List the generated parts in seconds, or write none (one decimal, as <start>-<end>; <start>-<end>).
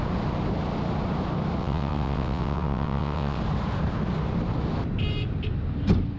1.6-3.4